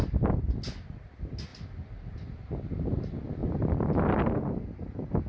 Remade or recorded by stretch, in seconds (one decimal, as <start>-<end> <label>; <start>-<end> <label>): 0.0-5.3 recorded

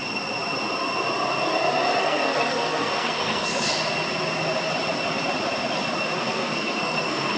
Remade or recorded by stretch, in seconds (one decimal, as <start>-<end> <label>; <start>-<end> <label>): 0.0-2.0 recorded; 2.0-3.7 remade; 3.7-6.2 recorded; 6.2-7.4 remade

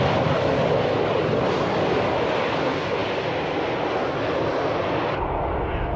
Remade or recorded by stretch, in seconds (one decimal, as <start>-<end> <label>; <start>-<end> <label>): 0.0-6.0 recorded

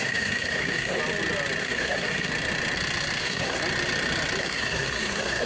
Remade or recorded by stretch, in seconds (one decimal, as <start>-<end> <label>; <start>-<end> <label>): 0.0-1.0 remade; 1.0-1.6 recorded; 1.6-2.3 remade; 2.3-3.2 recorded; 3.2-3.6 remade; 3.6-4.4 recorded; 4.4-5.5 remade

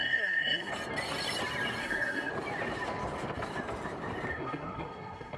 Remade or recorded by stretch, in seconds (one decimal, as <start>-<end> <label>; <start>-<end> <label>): 0.0-0.7 remade; 0.7-1.8 recorded; 1.8-2.3 remade; 2.3-4.3 recorded; 4.3-5.4 remade

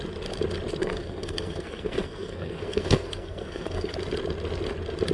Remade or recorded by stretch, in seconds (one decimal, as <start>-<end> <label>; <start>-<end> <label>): 0.0-0.8 recorded; 0.8-3.9 remade; 3.9-5.1 recorded

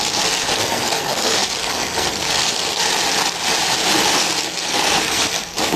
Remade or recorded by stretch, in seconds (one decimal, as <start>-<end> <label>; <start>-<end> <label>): 0.0-2.9 remade; 2.9-3.9 recorded; 3.9-5.8 remade

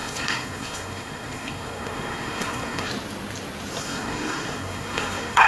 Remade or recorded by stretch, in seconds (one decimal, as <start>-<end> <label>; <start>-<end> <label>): 0.0-2.9 remade; 2.9-3.8 recorded; 3.8-5.5 remade